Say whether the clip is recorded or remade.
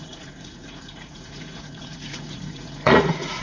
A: remade